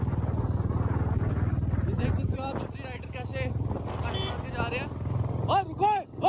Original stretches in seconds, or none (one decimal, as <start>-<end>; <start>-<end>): 0.0-6.3